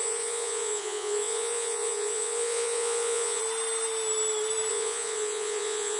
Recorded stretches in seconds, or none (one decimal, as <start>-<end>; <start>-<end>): 3.4-4.7